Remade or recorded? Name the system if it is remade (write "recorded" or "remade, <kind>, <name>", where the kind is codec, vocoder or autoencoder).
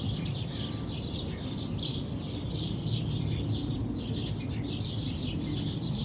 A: recorded